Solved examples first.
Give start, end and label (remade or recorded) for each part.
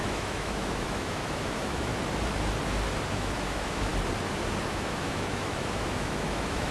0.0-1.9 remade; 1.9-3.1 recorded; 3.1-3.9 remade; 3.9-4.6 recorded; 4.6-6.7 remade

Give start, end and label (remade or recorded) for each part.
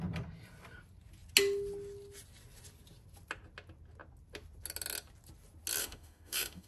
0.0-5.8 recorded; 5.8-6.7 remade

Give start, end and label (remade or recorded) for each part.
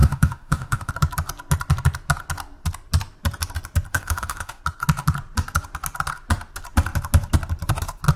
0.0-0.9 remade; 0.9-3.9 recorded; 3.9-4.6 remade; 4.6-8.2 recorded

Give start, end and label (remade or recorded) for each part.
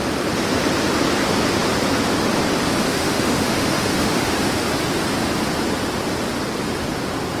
0.0-2.9 recorded; 2.9-4.3 remade; 4.3-7.4 recorded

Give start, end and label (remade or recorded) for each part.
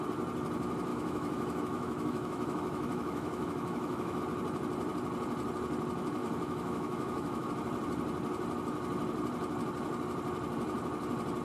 0.0-0.9 recorded; 0.9-4.2 remade; 4.2-6.2 recorded; 6.2-7.5 remade; 7.5-11.4 recorded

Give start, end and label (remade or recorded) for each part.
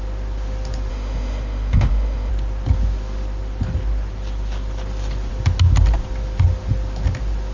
0.0-0.9 recorded; 0.9-2.3 remade; 2.3-7.5 recorded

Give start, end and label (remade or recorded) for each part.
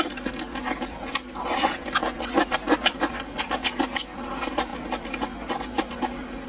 0.0-6.5 recorded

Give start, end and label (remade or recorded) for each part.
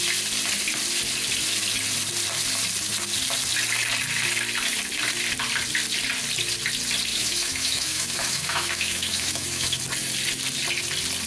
0.0-7.1 recorded; 7.1-9.8 remade; 9.8-11.3 recorded